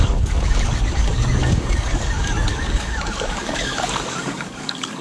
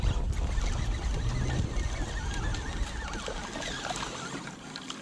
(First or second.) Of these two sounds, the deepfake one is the first